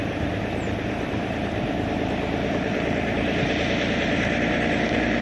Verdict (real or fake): fake